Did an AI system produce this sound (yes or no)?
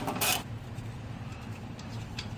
no